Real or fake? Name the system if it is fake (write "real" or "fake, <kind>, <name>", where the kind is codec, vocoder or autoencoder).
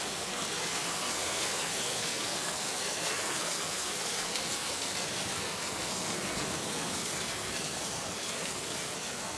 fake, codec, SNAC